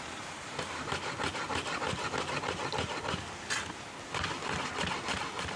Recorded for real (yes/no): yes